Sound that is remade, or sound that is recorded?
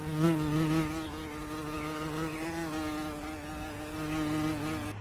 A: recorded